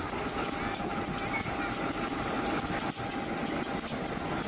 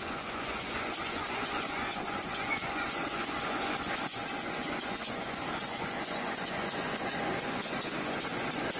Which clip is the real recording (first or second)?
first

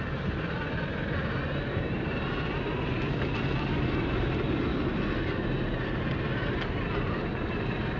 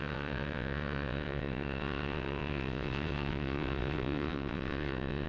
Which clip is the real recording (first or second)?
first